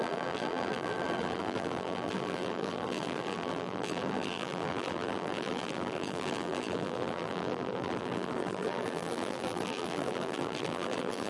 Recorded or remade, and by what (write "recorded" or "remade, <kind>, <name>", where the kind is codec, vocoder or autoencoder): remade, vocoder, BigVGAN v2